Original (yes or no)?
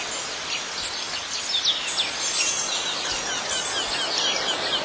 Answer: yes